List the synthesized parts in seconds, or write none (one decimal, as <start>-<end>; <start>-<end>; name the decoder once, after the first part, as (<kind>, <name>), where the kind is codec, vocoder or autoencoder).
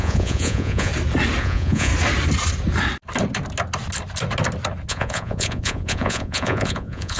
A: 0.0-0.9 (vocoder, Vocos); 1.4-1.9; 4.9-7.2